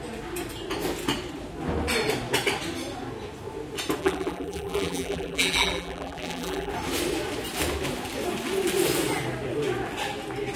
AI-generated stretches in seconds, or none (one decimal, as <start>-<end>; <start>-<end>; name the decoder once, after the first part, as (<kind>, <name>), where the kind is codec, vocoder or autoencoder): 4.0-6.7 (vocoder, BigVGAN v2)